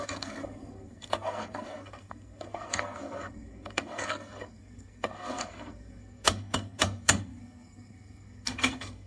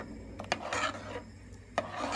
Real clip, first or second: second